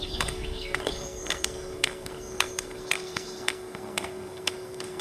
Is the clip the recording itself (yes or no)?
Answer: no